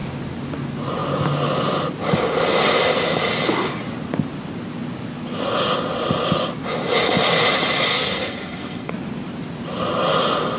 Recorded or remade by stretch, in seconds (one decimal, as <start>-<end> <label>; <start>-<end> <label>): 0.0-7.9 recorded; 7.9-8.9 remade; 8.9-10.6 recorded